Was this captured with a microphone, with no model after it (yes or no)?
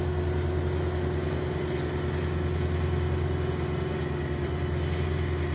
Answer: yes